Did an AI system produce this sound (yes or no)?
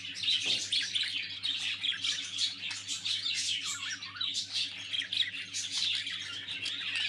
no